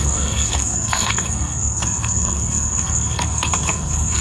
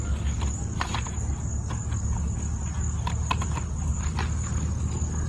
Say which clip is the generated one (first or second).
first